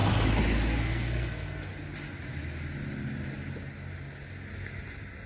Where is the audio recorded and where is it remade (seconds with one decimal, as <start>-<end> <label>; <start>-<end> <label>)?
0.0-0.8 recorded; 0.8-1.7 remade; 1.7-5.3 recorded